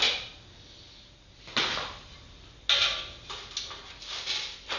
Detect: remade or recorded recorded